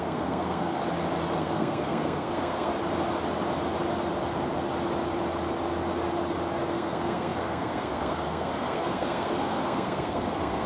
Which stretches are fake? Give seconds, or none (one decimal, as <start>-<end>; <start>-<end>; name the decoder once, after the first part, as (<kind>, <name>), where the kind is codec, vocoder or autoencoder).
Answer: 0.0-0.8 (codec, SNAC); 1.4-2.7; 6.7-10.7

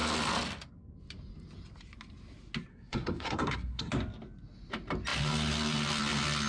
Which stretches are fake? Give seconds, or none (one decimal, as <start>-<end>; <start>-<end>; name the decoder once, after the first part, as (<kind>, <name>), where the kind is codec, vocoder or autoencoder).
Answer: 2.7-3.9 (codec, SNAC)

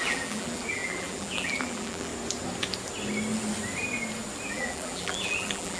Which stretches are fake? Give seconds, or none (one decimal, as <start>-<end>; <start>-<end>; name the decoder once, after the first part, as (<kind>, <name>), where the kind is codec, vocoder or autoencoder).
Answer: 0.0-2.1 (vocoder, BigVGAN v2); 4.5-5.8

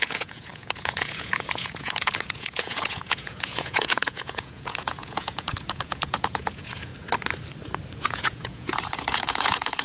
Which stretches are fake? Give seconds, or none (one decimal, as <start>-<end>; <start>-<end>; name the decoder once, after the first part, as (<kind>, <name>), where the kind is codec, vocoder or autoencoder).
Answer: 0.0-6.9 (vocoder, Vocos); 8.0-9.8

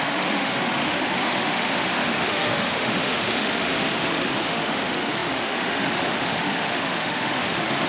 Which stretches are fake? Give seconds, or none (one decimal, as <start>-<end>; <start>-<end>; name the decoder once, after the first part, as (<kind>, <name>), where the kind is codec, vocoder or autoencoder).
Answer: 0.0-7.9 (autoencoder, DAC-VAE)

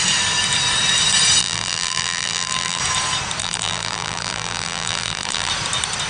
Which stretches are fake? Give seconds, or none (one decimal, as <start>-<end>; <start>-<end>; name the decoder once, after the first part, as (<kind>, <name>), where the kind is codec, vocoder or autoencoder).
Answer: 1.4-2.8 (vocoder, BigVGAN v2); 3.4-5.5

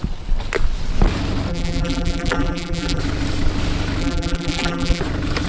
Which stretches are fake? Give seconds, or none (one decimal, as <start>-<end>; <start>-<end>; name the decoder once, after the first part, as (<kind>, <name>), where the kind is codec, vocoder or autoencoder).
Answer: 1.5-3.0 (vocoder, BigVGAN v2); 4.0-5.0

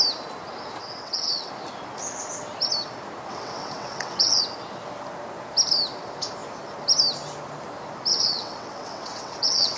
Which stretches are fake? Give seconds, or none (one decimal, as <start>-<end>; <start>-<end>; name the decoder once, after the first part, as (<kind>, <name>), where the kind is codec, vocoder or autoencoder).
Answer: 0.8-1.5 (vocoder, WaveNeXt); 3.3-4.4; 8.1-9.8